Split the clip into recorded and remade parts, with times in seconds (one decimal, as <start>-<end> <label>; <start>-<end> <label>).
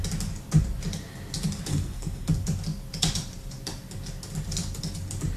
0.0-1.7 recorded; 1.7-2.3 remade; 2.3-5.4 recorded